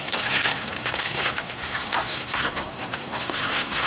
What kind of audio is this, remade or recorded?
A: remade